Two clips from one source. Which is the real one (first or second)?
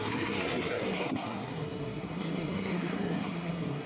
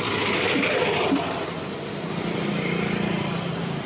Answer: second